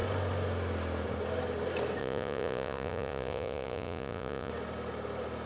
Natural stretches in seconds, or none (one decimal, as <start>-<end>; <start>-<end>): 0.0-2.0; 4.5-5.5